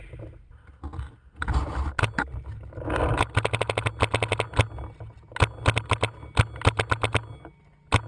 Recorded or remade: recorded